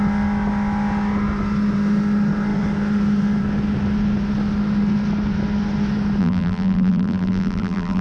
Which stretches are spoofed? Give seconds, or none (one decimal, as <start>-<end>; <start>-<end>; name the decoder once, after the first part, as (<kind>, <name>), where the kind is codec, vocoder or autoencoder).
6.2-8.0 (vocoder, BigVGAN v2)